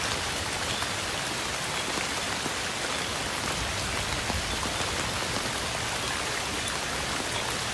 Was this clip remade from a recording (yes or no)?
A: no